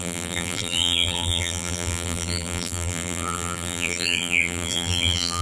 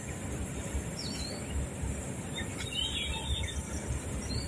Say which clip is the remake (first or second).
first